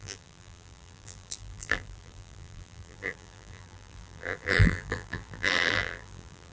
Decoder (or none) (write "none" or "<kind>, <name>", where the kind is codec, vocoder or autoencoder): vocoder, BigVGAN v2